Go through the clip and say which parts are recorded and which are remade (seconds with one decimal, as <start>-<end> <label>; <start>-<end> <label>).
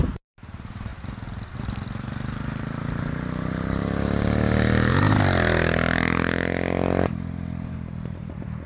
0.0-0.9 remade; 0.9-1.5 recorded; 1.5-4.9 remade; 4.9-7.0 recorded; 7.0-8.7 remade